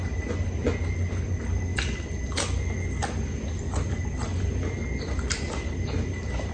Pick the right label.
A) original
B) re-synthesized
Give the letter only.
A